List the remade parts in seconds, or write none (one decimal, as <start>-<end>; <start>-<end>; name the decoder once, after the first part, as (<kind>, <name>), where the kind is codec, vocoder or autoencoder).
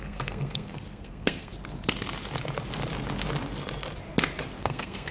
0.0-1.5 (codec, SNAC); 4.6-5.1